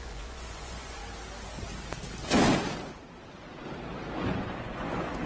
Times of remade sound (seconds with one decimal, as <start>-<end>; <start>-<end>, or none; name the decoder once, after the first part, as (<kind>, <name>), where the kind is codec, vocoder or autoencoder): 0.0-1.0 (vocoder, Vocos); 4.2-5.3

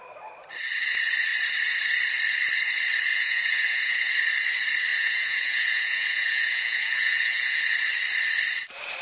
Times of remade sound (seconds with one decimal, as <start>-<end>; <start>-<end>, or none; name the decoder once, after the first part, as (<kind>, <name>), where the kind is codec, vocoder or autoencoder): 3.1-4.1 (vocoder, Vocos); 4.9-7.6

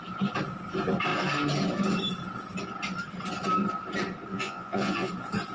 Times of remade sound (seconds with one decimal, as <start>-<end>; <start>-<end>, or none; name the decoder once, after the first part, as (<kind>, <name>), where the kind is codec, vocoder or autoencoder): 4.3-5.1 (vocoder, Vocos)

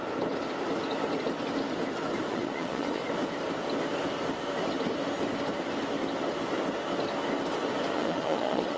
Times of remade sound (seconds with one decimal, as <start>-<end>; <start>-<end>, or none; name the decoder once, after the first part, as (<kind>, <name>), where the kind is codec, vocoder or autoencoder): 2.3-3.0 (vocoder, Vocos); 7.9-8.8

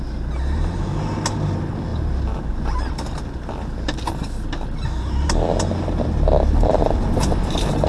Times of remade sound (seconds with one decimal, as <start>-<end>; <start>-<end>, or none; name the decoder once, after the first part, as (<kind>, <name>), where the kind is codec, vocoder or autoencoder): none

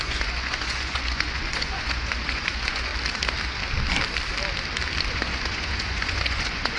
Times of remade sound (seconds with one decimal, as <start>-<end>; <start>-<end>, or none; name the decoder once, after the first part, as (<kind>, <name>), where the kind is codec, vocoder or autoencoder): 0.0-2.9 (vocoder, Vocos); 5.1-6.8

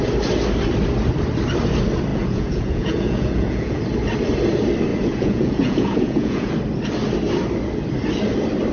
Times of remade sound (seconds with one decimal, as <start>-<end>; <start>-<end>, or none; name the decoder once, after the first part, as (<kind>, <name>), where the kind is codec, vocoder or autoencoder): 2.1-3.8 (vocoder, Vocos); 4.9-6.5